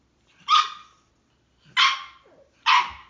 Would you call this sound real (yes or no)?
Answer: yes